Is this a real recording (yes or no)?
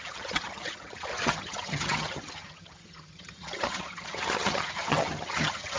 no